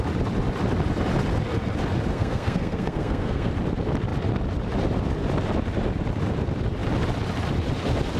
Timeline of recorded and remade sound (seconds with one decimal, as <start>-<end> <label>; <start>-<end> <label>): 0.0-2.1 recorded; 2.1-3.5 remade; 3.5-8.2 recorded